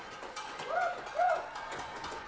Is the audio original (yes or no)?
no